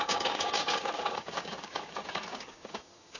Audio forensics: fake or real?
fake